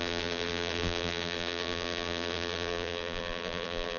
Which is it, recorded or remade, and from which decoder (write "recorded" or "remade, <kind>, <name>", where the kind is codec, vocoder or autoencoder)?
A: remade, vocoder, BigVGAN v2